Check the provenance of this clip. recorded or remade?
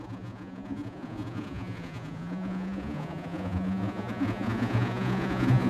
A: remade